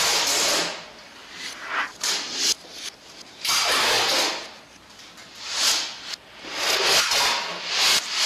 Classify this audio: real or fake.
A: real